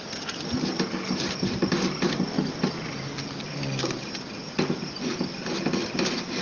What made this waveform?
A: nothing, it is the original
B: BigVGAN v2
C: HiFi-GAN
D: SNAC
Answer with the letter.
A